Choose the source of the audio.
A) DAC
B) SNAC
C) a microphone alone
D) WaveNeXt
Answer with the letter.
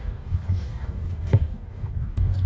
A